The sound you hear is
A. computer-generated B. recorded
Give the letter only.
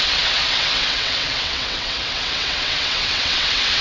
A